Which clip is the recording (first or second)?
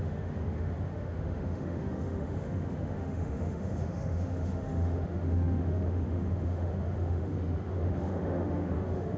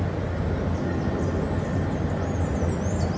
second